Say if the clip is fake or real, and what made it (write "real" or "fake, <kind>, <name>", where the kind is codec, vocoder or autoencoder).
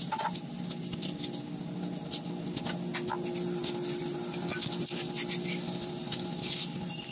real